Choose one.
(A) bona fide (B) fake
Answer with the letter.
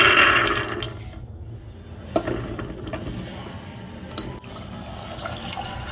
A